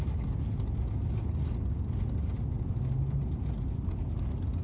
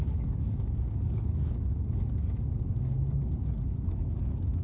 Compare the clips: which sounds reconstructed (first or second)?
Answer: second